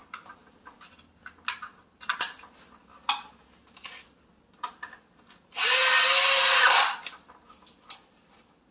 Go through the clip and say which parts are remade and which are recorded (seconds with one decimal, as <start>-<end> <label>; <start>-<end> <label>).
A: 0.0-8.7 recorded